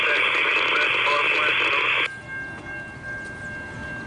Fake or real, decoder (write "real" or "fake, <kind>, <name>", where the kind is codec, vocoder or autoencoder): real